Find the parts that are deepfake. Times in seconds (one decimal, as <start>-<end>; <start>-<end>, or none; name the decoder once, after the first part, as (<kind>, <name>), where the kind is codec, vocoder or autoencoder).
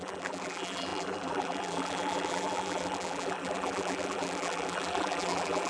0.0-5.7 (vocoder, BigVGAN v2)